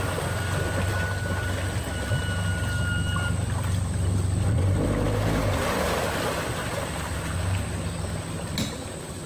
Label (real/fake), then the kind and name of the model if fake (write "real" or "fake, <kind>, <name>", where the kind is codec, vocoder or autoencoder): real